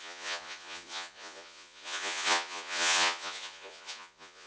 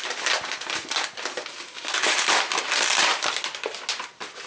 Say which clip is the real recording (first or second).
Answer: second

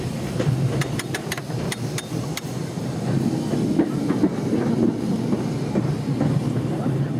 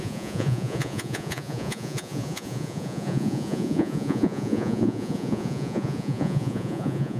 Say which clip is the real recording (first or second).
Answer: first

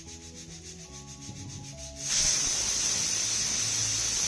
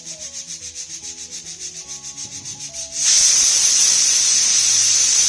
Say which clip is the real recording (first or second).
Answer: first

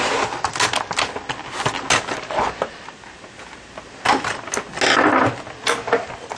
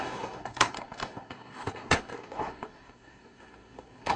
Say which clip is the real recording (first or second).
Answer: first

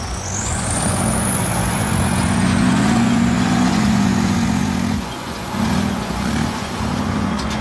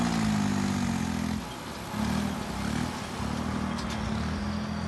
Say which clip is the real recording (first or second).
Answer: second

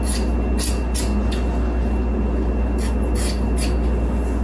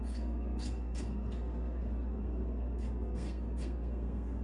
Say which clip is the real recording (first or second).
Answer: first